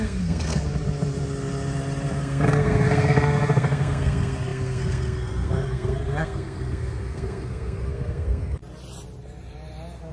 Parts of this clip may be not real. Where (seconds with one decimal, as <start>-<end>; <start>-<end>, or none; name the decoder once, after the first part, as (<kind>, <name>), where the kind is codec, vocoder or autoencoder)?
0.0-0.7 (codec, SNAC); 2.2-8.6

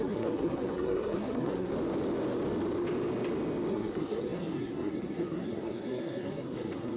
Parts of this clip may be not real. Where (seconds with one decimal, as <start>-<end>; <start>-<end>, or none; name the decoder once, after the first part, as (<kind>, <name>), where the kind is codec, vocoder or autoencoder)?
0.0-1.7 (codec, SNAC); 3.7-7.0

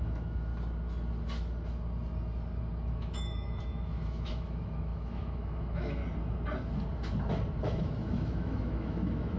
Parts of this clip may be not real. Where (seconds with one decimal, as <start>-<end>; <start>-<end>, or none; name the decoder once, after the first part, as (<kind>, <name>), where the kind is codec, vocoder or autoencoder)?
0.0-0.5 (autoencoder, DAC-VAE); 2.9-6.0; 7.6-9.4

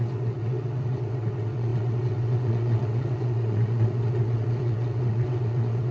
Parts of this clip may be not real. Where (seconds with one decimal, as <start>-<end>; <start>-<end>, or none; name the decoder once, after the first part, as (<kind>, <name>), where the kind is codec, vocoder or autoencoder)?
0.0-5.9 (vocoder, WaveNeXt)

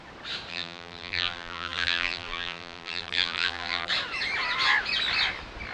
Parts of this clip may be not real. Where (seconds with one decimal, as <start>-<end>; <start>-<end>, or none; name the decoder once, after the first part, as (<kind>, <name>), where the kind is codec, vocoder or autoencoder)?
0.5-3.9 (vocoder, BigVGAN v2)